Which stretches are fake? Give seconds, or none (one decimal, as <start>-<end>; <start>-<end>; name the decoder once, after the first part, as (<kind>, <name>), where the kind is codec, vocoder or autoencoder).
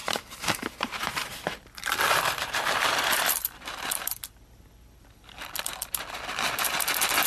0.0-4.4 (vocoder, BigVGAN v2)